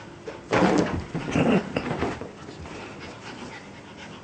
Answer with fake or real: real